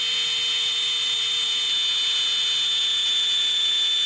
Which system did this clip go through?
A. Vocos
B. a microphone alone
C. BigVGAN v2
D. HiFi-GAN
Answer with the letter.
B